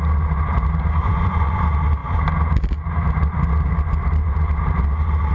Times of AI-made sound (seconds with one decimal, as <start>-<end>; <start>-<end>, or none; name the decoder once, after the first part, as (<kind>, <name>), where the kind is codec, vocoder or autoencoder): 1.0-1.6 (vocoder, Vocos)